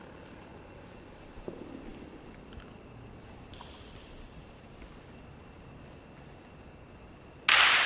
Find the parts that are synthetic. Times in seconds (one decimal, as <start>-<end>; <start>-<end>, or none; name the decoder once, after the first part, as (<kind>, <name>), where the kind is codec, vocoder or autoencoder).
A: 0.5-1.1 (vocoder, Vocos)